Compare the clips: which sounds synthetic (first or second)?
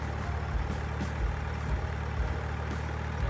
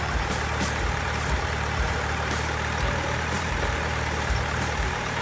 second